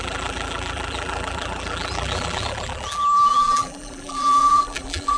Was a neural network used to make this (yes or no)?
yes